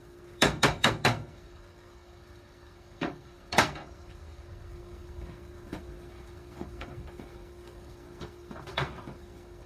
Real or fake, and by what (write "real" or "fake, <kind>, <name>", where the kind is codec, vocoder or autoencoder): fake, codec, SNAC